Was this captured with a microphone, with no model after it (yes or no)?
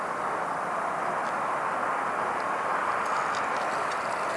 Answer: yes